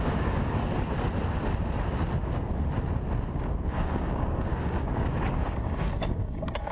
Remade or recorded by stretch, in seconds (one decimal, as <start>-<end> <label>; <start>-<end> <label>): 0.0-0.6 remade; 0.6-3.7 recorded; 3.7-6.7 remade